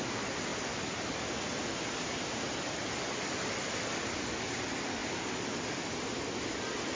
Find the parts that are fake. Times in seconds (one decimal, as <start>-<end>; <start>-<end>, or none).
none